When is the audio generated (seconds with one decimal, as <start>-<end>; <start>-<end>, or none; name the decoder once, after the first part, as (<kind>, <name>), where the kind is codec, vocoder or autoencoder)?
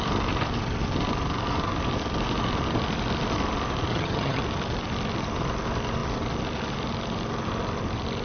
3.9-4.4 (vocoder, HiFi-GAN)